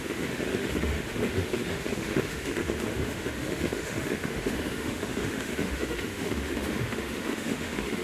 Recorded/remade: remade